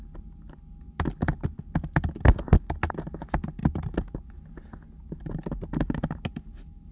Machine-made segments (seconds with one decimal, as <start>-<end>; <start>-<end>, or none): none